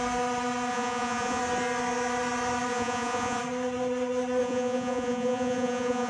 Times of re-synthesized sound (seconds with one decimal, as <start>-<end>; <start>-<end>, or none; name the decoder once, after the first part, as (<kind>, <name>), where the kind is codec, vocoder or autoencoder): 0.7-1.4 (vocoder, Vocos); 2.7-3.4; 4.4-6.1